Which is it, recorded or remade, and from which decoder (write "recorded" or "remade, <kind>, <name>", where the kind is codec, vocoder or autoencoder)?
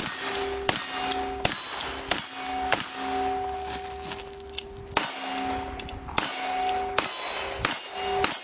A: recorded